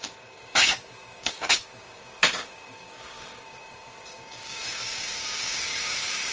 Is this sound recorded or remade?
remade